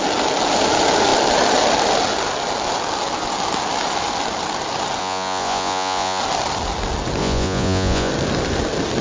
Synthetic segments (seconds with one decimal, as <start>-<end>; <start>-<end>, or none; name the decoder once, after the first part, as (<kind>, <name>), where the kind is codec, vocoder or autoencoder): 5.0-6.2 (vocoder, Vocos); 7.2-8.1